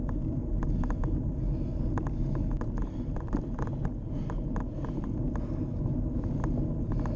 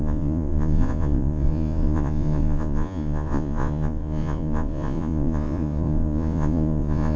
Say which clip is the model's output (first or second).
second